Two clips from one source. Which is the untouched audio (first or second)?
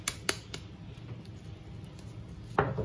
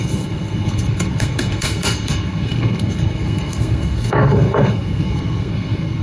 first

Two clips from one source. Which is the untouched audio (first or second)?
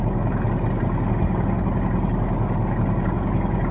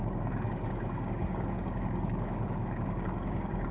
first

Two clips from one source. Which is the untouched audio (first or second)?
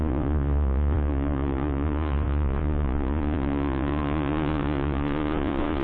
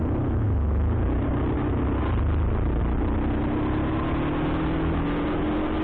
second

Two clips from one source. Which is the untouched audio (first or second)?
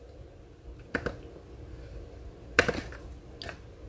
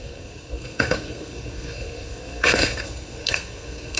first